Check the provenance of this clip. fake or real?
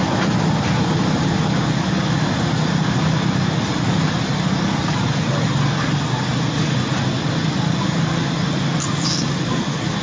real